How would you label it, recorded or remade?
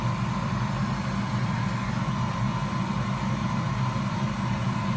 recorded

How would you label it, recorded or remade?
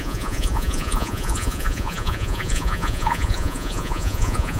remade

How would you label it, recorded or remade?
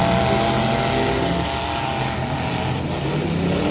recorded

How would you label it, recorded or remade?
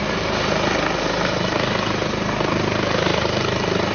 recorded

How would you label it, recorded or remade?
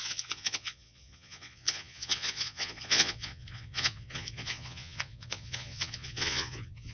remade